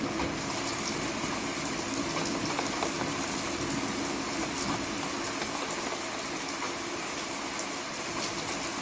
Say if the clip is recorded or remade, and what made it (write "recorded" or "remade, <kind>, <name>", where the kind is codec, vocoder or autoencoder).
recorded